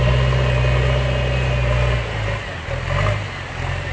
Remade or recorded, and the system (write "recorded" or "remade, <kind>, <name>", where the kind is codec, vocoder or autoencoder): recorded